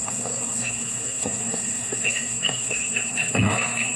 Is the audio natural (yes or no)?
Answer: no